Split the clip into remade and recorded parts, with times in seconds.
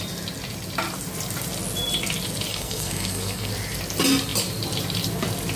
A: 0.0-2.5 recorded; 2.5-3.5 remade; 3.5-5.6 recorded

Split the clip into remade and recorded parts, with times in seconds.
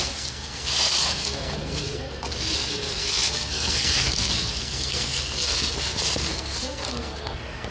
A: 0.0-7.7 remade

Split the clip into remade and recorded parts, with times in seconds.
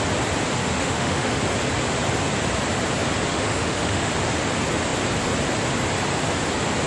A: 0.0-0.6 recorded; 0.6-1.4 remade; 1.4-3.3 recorded; 3.3-4.1 remade; 4.1-6.9 recorded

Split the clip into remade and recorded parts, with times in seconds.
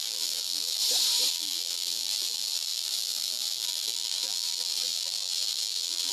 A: 0.0-0.8 remade; 0.8-1.3 recorded; 1.3-6.1 remade